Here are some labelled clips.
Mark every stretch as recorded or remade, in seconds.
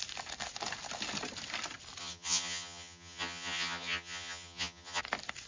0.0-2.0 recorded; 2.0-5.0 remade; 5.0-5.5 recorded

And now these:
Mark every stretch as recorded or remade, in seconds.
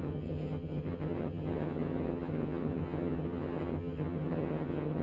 0.0-5.0 remade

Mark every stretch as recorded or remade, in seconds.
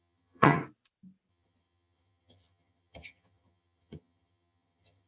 0.0-0.6 remade; 0.6-1.3 recorded; 1.3-5.1 remade